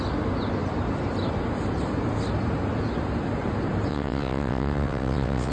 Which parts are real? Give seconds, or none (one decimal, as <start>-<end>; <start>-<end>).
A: 0.0-3.9